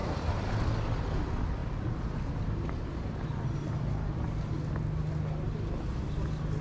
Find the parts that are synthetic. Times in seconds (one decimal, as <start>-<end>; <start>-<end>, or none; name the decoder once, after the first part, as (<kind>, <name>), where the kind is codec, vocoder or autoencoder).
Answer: 0.0-0.5 (vocoder, BigVGAN v2); 1.6-4.7